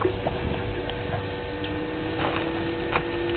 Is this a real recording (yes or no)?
yes